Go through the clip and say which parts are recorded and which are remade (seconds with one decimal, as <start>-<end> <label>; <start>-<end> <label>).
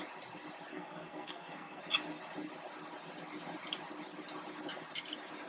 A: 0.0-0.7 recorded; 0.7-1.8 remade; 1.8-5.5 recorded